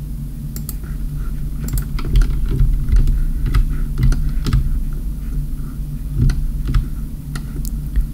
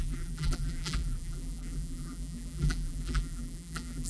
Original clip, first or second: first